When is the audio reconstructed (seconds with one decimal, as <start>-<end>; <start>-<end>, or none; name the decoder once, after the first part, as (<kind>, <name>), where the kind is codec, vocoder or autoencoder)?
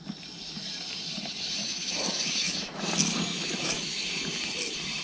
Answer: 1.6-2.8 (autoencoder, DAC-VAE); 3.3-4.2